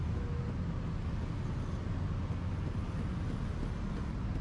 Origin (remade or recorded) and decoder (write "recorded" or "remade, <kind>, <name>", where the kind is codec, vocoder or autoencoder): recorded